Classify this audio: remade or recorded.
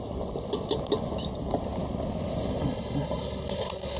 recorded